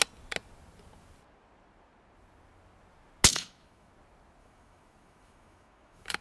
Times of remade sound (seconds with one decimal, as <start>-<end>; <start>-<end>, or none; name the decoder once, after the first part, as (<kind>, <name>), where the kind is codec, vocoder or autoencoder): 3.3-3.9 (autoencoder, DAC-VAE); 4.4-6.2